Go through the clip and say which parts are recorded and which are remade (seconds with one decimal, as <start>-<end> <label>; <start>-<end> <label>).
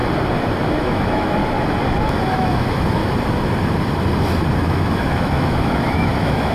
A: 0.0-0.8 recorded; 0.8-1.4 remade; 1.4-2.3 recorded; 2.3-3.0 remade; 3.0-4.6 recorded; 4.6-6.5 remade